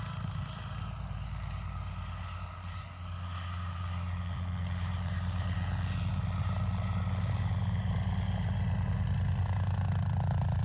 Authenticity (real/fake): real